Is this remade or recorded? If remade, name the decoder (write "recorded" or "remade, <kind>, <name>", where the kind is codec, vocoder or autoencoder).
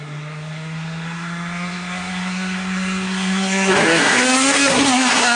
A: remade, codec, SNAC